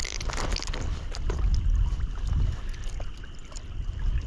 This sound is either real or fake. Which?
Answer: real